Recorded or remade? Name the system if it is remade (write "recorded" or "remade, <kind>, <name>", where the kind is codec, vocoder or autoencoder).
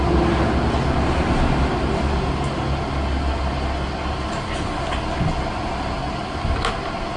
recorded